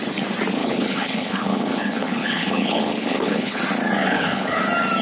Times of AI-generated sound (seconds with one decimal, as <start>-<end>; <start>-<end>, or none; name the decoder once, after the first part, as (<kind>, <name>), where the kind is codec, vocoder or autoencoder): 0.6-3.6 (codec, HILCodec); 4.0-4.6